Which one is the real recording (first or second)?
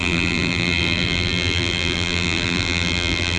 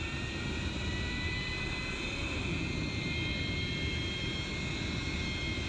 second